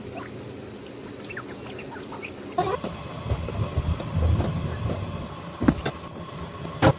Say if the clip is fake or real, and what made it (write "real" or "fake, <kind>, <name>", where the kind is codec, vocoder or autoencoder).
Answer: real